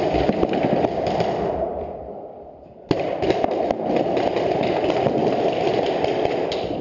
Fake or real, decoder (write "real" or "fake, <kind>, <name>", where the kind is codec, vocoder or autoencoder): real